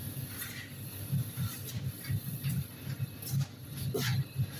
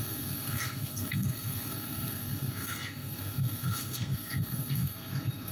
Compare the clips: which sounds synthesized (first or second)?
second